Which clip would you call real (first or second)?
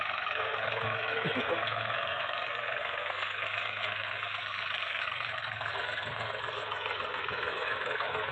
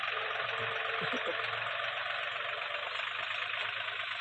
second